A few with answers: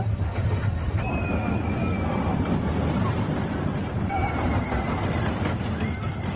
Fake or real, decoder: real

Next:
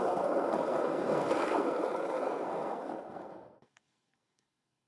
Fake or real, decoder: fake, codec, SNAC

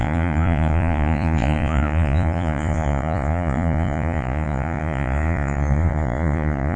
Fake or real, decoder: fake, vocoder, Vocos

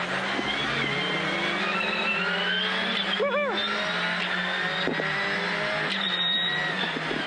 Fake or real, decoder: real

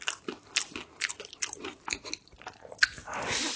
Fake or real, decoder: real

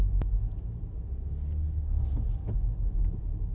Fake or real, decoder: real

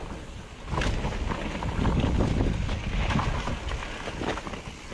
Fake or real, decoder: real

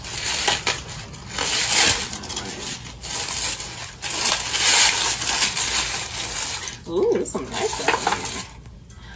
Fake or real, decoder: real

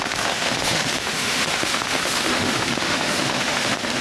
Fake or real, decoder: fake, autoencoder, DAC-VAE